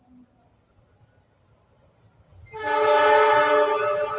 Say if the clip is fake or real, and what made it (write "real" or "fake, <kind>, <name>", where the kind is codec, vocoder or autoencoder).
real